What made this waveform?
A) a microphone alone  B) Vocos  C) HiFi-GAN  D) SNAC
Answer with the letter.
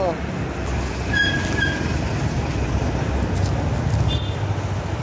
A